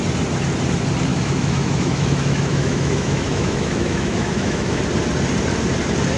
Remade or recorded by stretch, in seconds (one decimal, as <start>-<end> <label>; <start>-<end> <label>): 0.0-1.1 recorded; 1.1-4.8 remade; 4.8-6.2 recorded